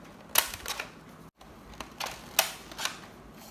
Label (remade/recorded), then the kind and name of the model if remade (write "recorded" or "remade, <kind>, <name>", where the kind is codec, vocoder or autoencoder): recorded